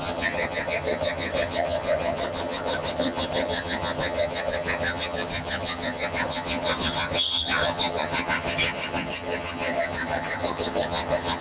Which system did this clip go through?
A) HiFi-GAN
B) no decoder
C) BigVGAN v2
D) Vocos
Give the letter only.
A